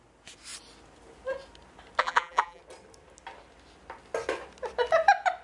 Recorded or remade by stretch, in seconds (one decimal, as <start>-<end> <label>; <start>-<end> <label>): 0.0-2.0 recorded; 2.0-2.6 remade; 2.6-5.4 recorded